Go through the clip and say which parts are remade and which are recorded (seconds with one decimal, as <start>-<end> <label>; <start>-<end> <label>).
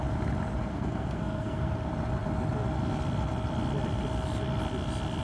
0.0-0.7 recorded; 0.7-1.7 remade; 1.7-5.2 recorded